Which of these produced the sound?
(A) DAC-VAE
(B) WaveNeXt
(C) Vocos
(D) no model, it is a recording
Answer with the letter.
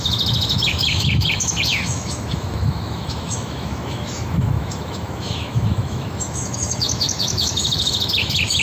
A